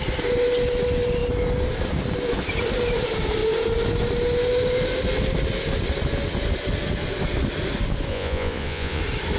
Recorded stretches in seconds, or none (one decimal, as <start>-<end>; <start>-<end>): 0.0-8.1; 9.0-9.4